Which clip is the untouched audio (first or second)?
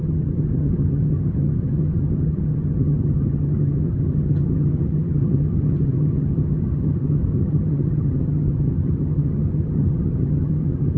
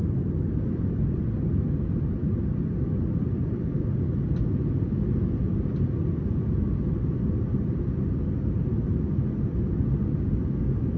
second